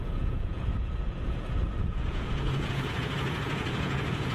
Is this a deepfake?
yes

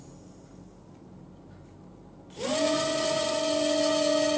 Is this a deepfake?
no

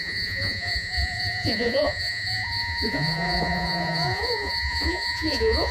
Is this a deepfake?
yes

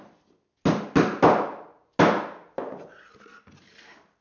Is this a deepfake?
no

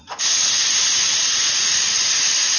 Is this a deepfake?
yes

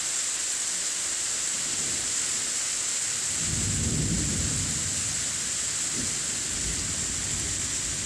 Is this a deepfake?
no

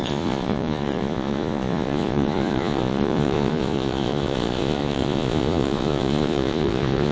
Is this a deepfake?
yes